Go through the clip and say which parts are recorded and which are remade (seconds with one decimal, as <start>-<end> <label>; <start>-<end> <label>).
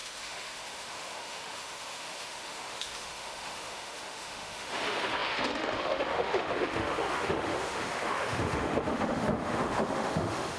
0.0-10.6 remade